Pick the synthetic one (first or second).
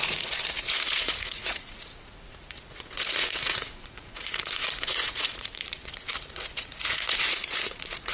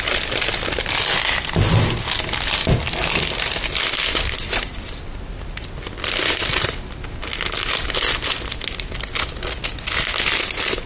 first